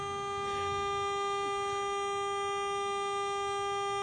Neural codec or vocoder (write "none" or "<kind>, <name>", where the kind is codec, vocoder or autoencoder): none